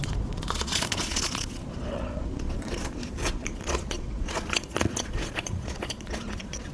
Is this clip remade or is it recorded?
remade